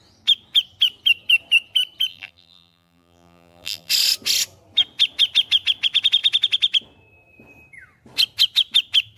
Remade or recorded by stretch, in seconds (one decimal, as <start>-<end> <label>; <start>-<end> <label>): 0.0-2.1 recorded; 2.1-3.9 remade; 3.9-9.2 recorded